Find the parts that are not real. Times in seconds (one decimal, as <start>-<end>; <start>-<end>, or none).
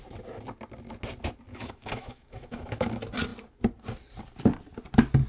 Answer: 1.5-2.9